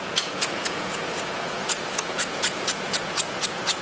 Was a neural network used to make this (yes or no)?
yes